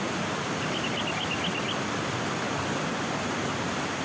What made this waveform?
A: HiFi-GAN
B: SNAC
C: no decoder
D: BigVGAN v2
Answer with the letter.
C